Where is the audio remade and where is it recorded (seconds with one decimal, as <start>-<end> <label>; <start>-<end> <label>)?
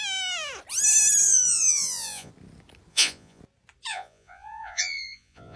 0.0-1.2 recorded; 1.2-2.3 remade; 2.3-2.9 recorded; 2.9-3.4 remade; 3.4-3.9 recorded; 3.9-5.6 remade